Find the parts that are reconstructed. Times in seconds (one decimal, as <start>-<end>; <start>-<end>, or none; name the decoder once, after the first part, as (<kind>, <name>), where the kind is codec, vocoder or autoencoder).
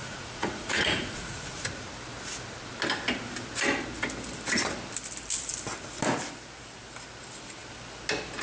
0.0-1.6 (vocoder, Vocos)